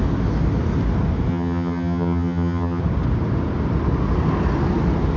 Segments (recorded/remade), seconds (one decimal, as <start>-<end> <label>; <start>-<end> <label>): 0.0-1.3 recorded; 1.3-2.8 remade; 2.8-5.2 recorded